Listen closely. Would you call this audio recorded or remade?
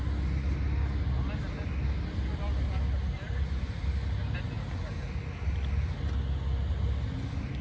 recorded